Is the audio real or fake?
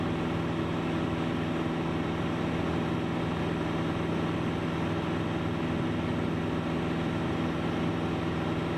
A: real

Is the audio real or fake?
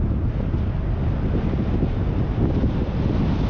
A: real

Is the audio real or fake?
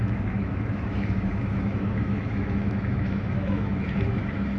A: fake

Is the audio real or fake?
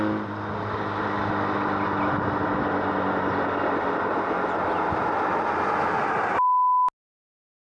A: real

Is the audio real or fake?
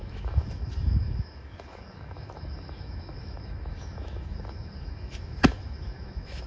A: fake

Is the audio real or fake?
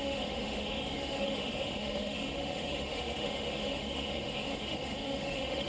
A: fake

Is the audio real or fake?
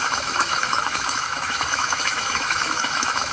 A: fake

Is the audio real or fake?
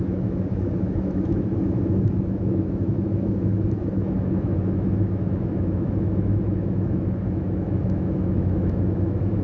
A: fake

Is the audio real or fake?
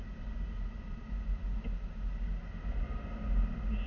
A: real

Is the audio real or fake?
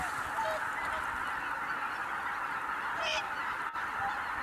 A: real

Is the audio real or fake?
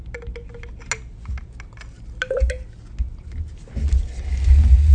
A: real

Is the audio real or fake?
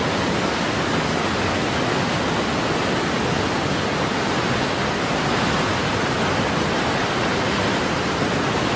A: real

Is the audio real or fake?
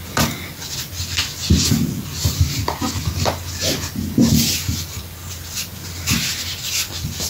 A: real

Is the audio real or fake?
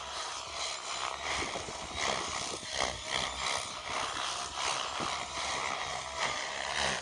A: real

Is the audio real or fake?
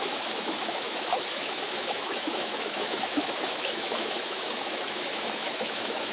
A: fake